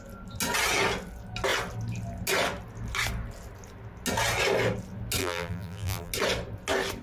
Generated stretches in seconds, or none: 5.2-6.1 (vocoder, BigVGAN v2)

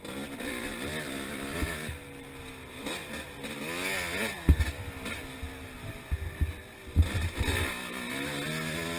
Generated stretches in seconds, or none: none

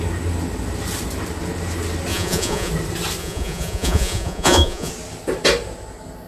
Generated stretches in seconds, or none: 2.1-2.7 (vocoder, Vocos); 3.2-4.9

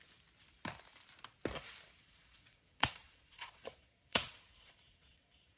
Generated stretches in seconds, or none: 2.0-5.6 (vocoder, Vocos)

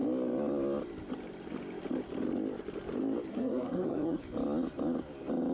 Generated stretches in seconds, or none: 3.3-4.2 (codec, SNAC)

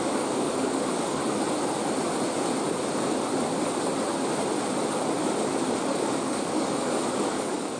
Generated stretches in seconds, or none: 0.0-1.2 (codec, DAC); 5.7-7.8